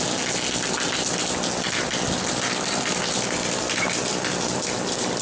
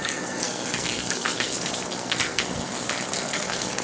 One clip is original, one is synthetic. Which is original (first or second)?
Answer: first